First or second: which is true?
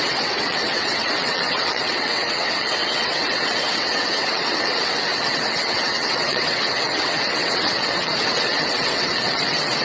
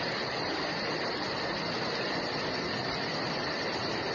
second